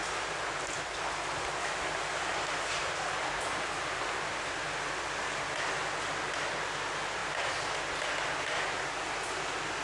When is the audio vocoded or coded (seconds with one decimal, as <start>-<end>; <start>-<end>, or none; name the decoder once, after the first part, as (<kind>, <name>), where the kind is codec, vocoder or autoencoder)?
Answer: none